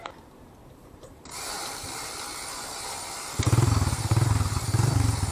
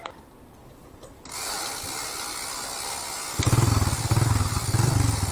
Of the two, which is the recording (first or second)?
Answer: second